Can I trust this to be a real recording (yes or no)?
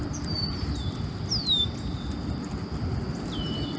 yes